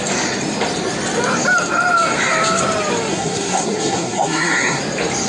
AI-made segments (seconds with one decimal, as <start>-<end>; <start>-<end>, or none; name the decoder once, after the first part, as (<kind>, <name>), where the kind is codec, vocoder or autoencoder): 3.1-4.8 (codec, SNAC)